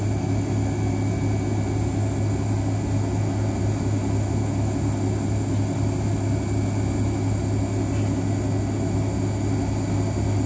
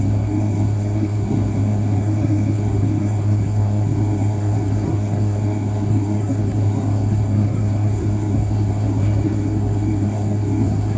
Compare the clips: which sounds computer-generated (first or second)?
second